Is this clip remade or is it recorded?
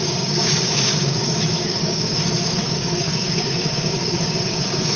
remade